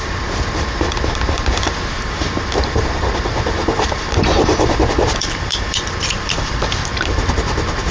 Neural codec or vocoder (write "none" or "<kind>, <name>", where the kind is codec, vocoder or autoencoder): vocoder, BigVGAN v2